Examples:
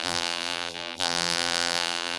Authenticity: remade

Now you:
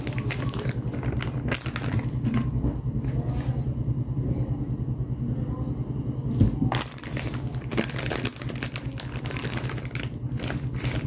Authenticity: recorded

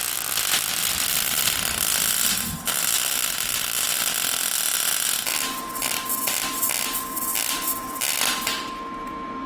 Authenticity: recorded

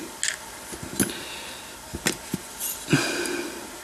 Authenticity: recorded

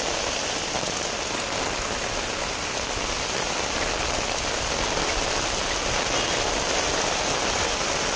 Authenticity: recorded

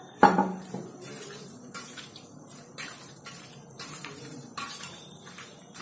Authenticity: remade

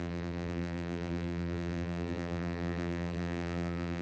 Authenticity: remade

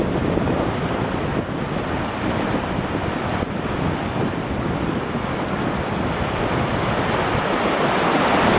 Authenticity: recorded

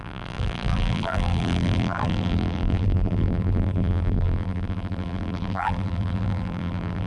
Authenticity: remade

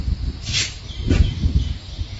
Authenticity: remade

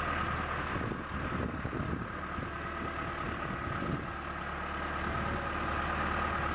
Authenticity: recorded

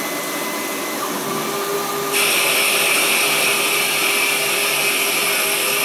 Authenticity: recorded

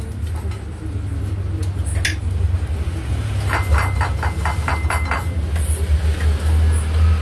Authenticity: recorded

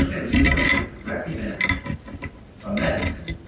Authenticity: recorded